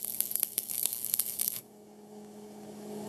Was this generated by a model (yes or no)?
yes